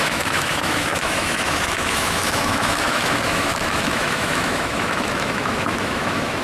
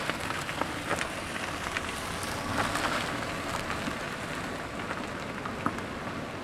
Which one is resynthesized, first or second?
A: first